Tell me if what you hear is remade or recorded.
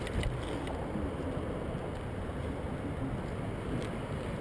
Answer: recorded